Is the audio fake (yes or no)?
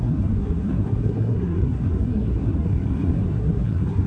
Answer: yes